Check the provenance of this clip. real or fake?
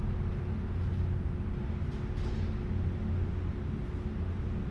real